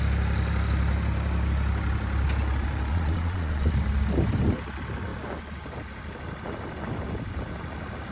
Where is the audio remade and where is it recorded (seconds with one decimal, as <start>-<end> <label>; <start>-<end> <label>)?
0.0-2.9 recorded; 2.9-3.7 remade; 3.7-8.1 recorded